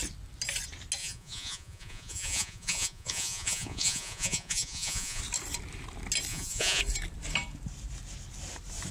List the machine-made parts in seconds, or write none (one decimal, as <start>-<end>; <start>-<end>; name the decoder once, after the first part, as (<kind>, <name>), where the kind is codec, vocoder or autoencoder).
1.0-5.2 (vocoder, Vocos); 6.3-6.8